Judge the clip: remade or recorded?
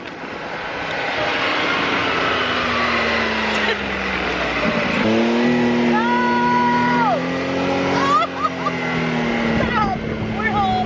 recorded